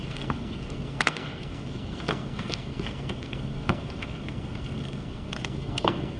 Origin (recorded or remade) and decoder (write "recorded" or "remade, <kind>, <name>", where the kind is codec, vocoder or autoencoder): remade, codec, SNAC